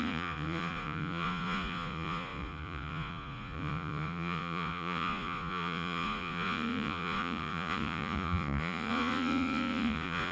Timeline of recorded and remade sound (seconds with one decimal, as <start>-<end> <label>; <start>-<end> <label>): 0.0-10.3 remade